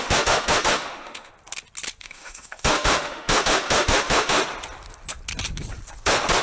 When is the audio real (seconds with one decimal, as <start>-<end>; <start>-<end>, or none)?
1.3-2.0; 4.4-6.4